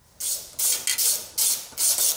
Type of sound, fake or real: real